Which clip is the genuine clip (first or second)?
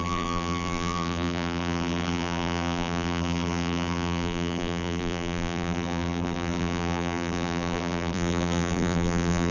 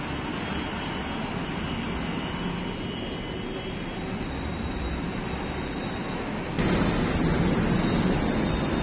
second